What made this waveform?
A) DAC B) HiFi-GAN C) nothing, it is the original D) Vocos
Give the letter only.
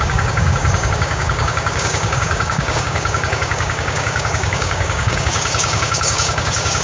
A